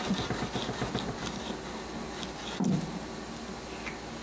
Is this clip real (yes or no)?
yes